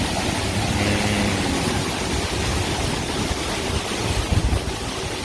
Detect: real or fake real